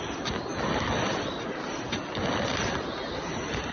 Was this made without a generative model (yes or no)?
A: yes